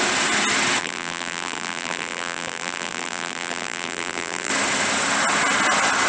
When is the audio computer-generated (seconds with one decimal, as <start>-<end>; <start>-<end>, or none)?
0.8-4.5